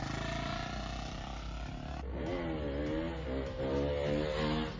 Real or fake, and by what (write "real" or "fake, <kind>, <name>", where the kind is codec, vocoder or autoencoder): real